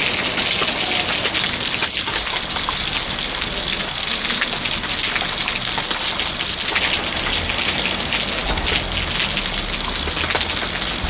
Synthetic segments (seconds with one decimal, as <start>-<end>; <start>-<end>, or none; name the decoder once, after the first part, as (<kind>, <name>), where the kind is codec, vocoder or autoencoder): none